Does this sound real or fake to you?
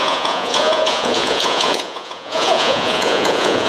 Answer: fake